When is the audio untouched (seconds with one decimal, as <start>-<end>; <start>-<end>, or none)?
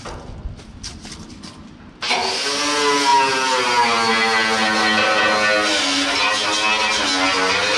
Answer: 0.0-7.8